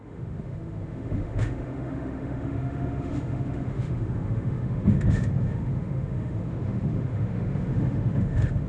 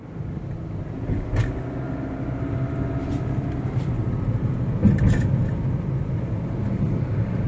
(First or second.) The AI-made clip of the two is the first